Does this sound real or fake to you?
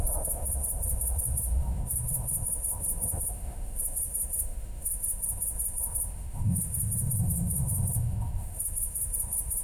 fake